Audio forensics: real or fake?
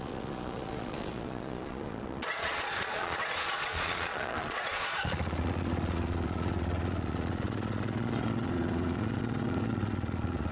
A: fake